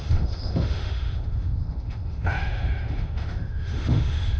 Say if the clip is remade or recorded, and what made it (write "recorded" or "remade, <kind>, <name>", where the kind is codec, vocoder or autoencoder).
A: remade, autoencoder, DAC-VAE